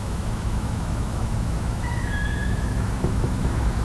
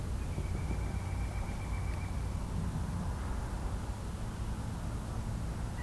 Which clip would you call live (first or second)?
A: second